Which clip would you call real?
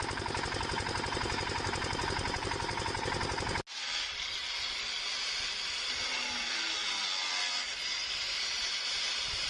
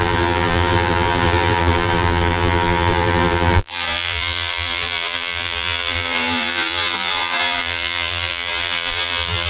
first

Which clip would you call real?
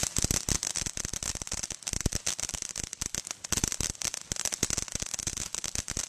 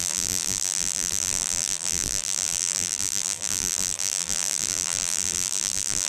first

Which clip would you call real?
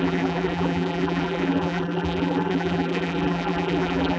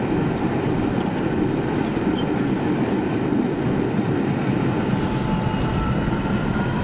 second